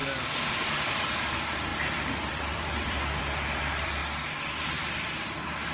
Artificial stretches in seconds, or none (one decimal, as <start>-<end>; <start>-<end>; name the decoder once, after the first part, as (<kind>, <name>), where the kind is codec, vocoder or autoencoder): 0.0-4.0 (vocoder, BigVGAN v2); 4.6-5.7